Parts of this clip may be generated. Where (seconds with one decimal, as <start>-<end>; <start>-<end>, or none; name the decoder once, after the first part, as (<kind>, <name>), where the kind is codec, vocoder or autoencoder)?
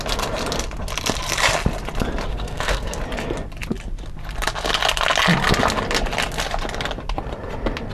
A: 2.3-3.0 (codec, SNAC)